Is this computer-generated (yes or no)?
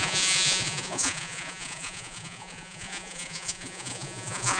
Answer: yes